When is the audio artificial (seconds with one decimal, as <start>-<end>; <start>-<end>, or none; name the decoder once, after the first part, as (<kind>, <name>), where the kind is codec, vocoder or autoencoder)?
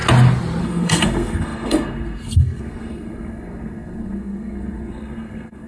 0.6-5.7 (codec, SNAC)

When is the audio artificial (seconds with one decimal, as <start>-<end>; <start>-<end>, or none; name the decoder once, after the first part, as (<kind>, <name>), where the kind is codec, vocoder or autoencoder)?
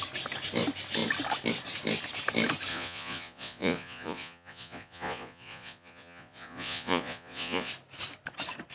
2.7-7.7 (vocoder, Vocos)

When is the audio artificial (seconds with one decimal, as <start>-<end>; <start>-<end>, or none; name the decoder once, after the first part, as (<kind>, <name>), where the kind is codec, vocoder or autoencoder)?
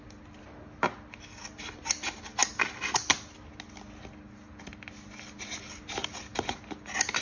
none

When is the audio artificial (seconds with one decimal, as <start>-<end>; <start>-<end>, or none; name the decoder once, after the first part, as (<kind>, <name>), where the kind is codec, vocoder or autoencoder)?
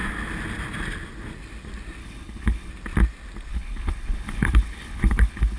2.0-2.7 (codec, HILCodec); 3.5-5.6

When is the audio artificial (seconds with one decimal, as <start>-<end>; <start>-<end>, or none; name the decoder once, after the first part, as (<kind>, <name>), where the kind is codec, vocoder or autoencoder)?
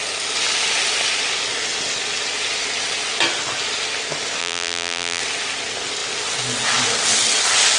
4.4-5.2 (vocoder, BigVGAN v2)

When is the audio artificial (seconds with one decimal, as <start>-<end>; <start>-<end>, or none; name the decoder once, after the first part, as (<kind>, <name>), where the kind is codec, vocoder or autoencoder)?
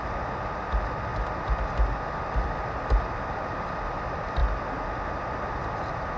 none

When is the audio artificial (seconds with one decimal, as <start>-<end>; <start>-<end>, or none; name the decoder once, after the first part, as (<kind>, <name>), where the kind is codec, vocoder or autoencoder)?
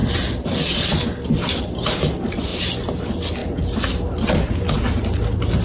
none